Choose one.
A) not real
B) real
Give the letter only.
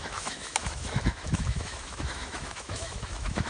A